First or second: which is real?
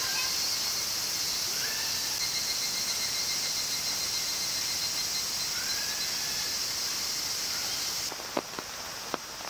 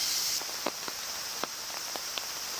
first